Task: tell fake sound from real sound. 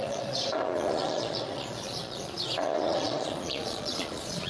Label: fake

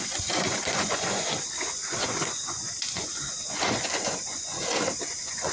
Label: fake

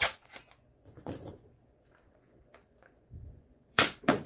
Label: fake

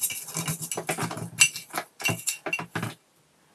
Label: real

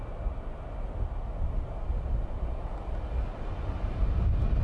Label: real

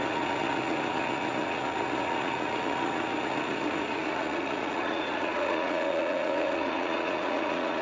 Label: fake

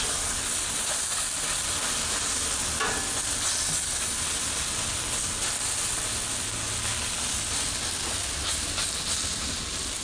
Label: real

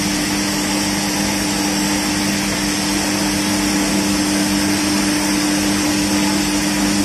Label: real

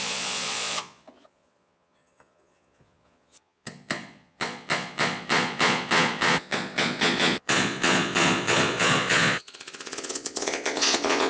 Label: fake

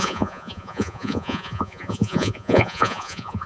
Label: fake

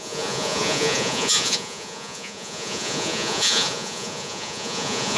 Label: fake